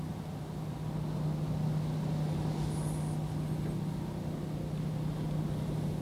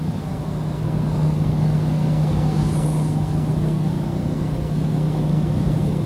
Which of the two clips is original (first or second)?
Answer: first